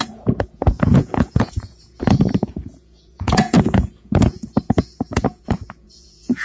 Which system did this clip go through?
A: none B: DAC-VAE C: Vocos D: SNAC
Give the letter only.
C